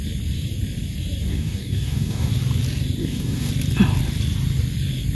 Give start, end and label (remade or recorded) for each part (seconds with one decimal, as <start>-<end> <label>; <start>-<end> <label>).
0.0-1.3 recorded; 1.3-2.3 remade; 2.3-3.0 recorded; 3.0-3.5 remade; 3.5-5.1 recorded

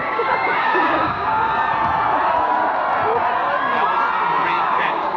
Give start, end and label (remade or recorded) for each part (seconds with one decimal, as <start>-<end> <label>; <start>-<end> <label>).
0.0-1.5 remade; 1.5-4.6 recorded; 4.6-5.2 remade

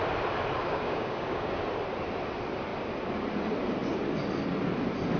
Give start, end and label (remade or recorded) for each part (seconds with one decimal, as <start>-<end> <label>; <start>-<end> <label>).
0.0-0.6 recorded; 0.6-1.6 remade; 1.6-5.2 recorded

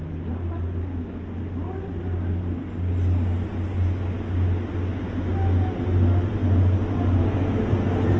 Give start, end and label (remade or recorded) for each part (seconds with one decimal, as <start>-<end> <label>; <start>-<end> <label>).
0.0-8.2 recorded

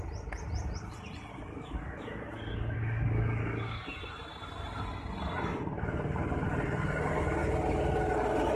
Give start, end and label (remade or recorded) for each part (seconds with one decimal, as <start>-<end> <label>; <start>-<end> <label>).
0.0-1.3 recorded; 1.3-3.8 remade; 3.8-8.6 recorded

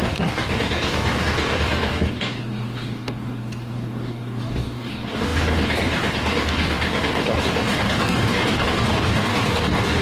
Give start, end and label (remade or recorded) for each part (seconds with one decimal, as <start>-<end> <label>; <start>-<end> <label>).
0.0-10.0 remade

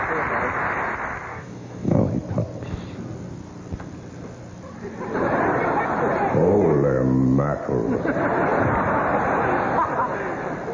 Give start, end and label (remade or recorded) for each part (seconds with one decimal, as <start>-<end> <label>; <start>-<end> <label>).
0.0-1.3 recorded; 1.3-2.0 remade; 2.0-10.7 recorded

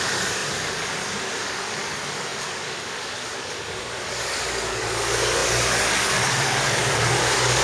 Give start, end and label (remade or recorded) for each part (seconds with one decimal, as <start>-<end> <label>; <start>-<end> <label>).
0.0-7.6 remade